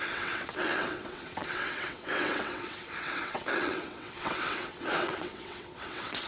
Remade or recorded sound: remade